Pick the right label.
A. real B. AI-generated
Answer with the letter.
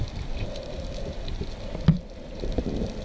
A